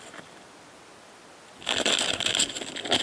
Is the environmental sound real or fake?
real